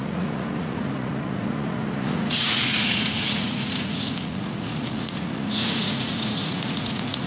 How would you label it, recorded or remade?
remade